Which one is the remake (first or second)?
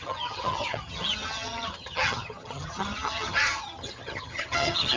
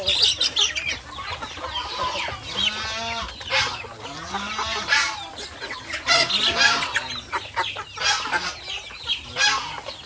first